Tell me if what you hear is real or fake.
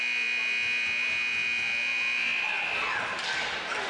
real